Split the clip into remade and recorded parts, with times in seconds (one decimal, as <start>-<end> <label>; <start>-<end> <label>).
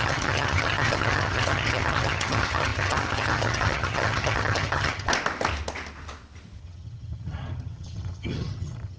0.0-5.1 remade; 5.1-6.6 recorded; 6.6-9.0 remade